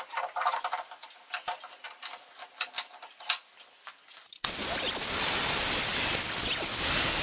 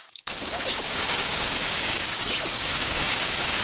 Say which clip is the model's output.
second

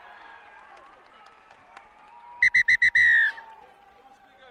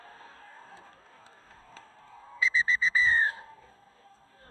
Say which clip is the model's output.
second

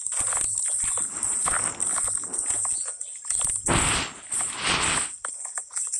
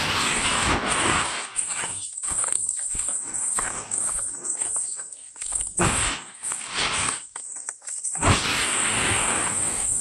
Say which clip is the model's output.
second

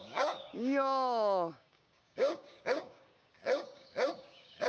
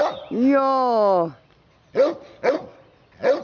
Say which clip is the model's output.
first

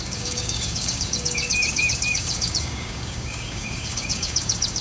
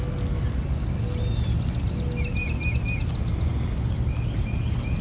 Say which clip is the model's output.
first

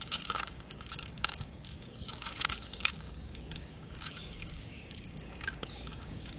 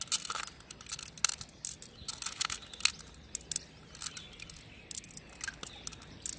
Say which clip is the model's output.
first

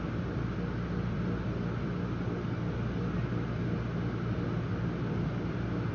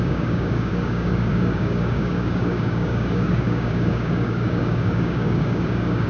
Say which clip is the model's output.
second